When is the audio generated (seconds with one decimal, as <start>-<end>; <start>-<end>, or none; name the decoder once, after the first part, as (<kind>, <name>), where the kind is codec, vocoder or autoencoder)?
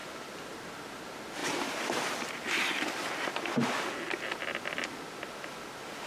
1.4-4.2 (vocoder, BigVGAN v2)